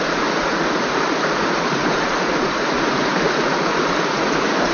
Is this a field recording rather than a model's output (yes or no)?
no